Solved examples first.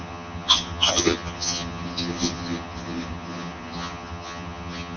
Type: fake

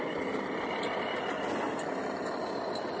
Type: real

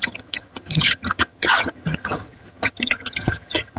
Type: fake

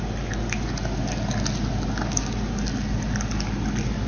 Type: real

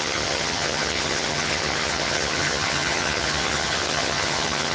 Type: fake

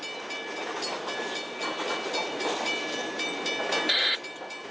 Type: real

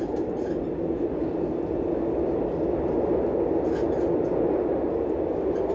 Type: real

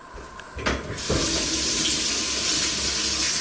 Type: real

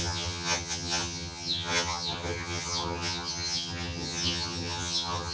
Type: fake